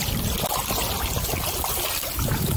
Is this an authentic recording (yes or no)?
no